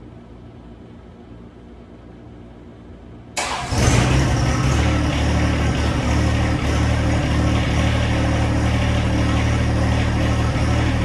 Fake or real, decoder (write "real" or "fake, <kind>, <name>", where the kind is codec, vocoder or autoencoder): real